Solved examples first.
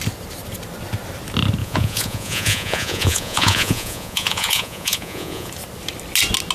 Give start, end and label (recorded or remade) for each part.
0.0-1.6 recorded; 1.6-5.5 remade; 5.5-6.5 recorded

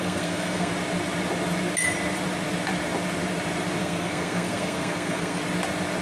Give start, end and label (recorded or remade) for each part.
0.0-0.7 remade; 0.7-3.8 recorded; 3.8-5.4 remade; 5.4-6.0 recorded

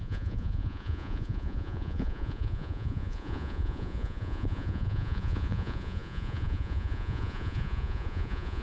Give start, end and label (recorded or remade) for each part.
0.0-8.6 remade

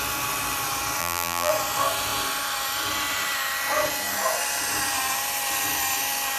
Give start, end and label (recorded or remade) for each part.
0.0-1.0 recorded; 1.0-1.5 remade; 1.5-6.4 recorded

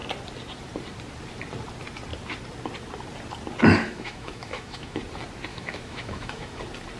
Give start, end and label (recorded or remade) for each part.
0.0-3.8 recorded; 3.8-5.0 remade; 5.0-5.5 recorded; 5.5-6.6 remade; 6.6-7.0 recorded

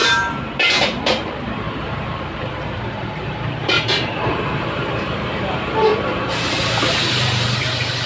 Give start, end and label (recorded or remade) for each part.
0.0-5.9 remade; 5.9-6.8 recorded; 6.8-8.1 remade

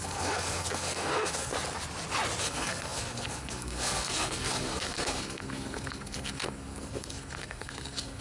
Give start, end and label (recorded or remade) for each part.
0.0-1.5 remade; 1.5-2.4 recorded; 2.4-8.2 remade